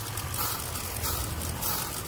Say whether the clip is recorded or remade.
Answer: recorded